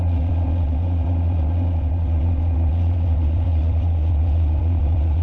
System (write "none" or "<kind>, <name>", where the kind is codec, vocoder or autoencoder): vocoder, WaveNeXt